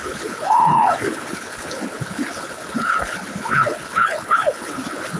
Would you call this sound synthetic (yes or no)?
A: yes